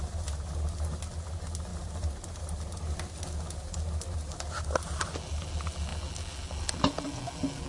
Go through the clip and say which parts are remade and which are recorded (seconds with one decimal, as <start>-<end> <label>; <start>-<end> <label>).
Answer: 0.0-7.7 recorded